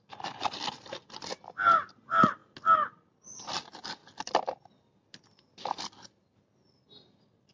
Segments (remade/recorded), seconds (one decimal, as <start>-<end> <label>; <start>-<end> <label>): 0.0-2.4 remade; 2.4-3.4 recorded; 3.4-4.0 remade; 4.0-7.5 recorded